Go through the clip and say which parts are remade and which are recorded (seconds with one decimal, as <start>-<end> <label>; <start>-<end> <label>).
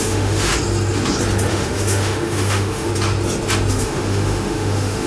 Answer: 0.0-0.5 remade; 0.5-1.5 recorded; 1.5-2.9 remade; 2.9-3.7 recorded; 3.7-5.1 remade